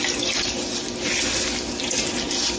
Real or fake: real